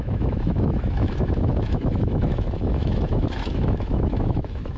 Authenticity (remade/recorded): remade